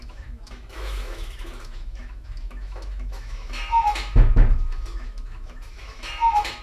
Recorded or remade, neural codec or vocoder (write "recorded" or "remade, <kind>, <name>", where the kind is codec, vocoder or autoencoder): remade, autoencoder, DAC-VAE